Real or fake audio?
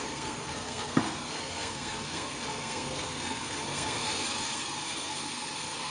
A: fake